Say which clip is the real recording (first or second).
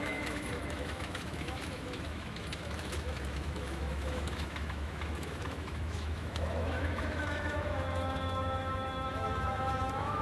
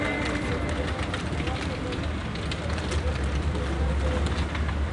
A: second